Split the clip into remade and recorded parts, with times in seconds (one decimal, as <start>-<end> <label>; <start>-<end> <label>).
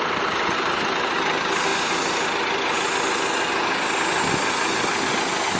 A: 0.0-5.6 recorded